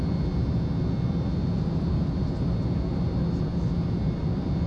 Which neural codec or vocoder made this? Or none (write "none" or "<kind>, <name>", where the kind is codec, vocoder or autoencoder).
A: none